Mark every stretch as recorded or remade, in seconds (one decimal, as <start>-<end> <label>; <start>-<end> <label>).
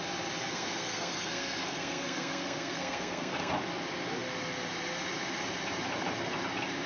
0.0-0.4 recorded; 0.4-3.5 remade; 3.5-6.9 recorded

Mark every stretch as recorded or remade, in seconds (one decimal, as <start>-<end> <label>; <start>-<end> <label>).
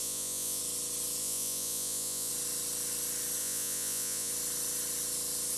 0.0-0.6 remade; 0.6-1.2 recorded; 1.2-2.3 remade; 2.3-3.4 recorded; 3.4-4.3 remade; 4.3-5.6 recorded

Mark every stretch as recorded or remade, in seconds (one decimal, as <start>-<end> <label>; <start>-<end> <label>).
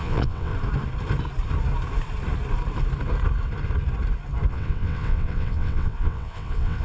0.0-0.5 remade; 0.5-4.5 recorded; 4.5-6.8 remade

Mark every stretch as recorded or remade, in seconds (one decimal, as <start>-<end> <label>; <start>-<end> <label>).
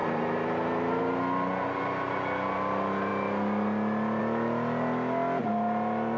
0.0-6.2 recorded